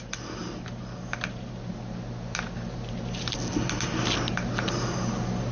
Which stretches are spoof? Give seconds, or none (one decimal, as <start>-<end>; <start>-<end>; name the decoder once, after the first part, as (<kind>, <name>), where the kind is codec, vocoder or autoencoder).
none